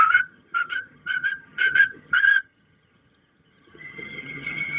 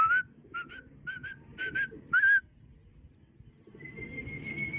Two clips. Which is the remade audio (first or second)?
first